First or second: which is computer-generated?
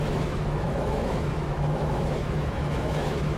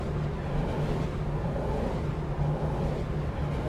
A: first